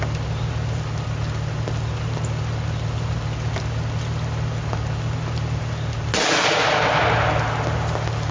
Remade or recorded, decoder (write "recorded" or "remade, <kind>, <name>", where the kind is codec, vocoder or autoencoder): recorded